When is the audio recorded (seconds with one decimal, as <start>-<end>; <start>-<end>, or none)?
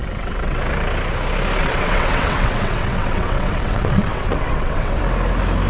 0.6-1.6; 5.0-5.7